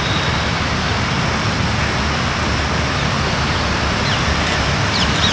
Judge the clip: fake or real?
real